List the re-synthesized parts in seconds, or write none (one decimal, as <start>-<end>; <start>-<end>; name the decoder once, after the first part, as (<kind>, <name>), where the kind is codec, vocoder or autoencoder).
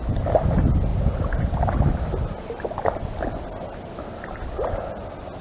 none